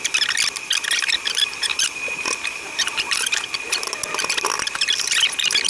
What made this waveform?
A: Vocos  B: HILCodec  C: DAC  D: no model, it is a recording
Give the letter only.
D